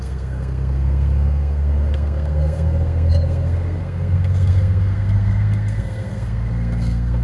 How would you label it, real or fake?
fake